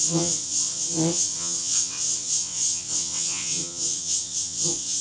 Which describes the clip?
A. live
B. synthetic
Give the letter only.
B